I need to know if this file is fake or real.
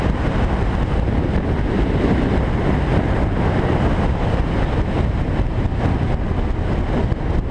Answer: real